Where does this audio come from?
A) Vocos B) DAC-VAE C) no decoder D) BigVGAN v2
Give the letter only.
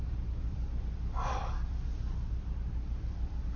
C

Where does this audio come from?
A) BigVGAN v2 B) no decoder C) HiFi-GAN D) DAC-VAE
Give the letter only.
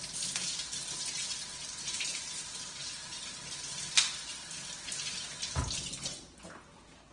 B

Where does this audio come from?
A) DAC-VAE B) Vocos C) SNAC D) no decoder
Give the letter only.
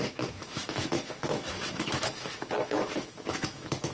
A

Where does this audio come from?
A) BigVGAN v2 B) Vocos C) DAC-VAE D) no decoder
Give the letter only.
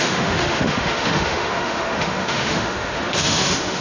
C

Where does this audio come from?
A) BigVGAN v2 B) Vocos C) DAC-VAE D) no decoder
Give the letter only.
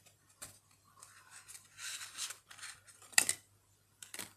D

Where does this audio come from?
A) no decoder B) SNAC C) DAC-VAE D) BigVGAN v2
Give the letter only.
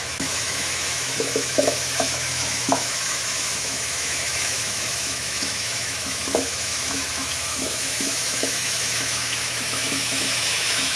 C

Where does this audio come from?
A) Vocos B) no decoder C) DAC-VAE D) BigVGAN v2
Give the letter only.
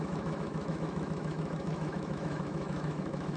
C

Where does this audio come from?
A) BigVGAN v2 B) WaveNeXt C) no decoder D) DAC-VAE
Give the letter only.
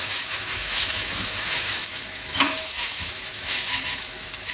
D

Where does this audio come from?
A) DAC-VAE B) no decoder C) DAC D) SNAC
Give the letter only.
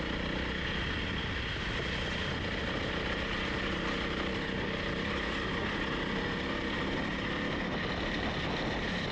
B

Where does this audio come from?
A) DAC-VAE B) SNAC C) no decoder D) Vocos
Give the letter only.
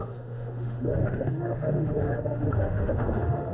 A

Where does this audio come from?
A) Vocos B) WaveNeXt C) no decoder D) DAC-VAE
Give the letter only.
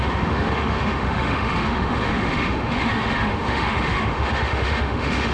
D